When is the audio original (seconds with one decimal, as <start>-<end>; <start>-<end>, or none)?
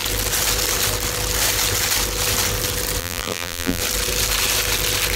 0.0-3.0; 3.8-5.2